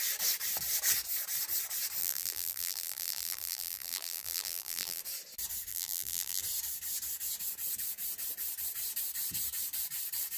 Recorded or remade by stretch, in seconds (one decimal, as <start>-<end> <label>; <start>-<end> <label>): 0.0-2.0 recorded; 2.0-5.0 remade; 5.0-5.7 recorded; 5.7-6.4 remade; 6.4-10.4 recorded